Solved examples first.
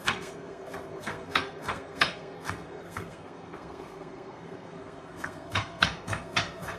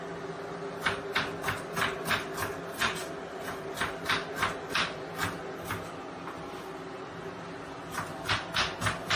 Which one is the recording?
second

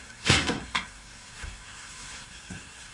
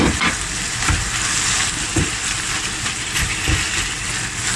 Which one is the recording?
second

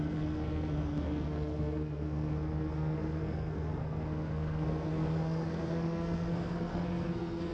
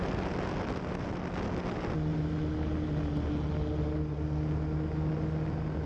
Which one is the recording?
second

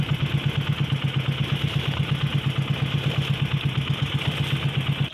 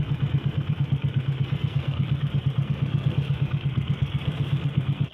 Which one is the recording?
first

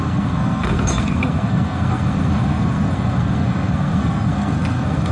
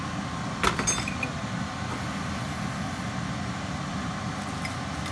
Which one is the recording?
second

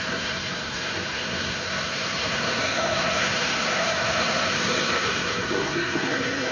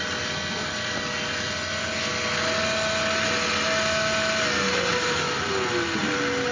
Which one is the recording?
second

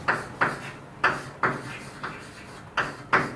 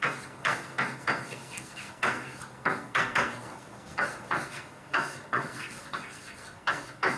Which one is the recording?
first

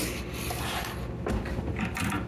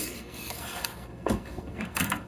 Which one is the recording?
first